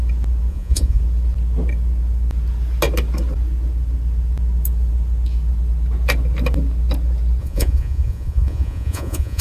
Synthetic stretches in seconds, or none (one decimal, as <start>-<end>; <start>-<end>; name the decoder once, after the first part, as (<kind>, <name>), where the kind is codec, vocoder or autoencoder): 0.5-1.0 (vocoder, Vocos); 7.4-9.4